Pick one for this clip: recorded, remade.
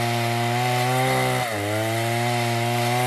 recorded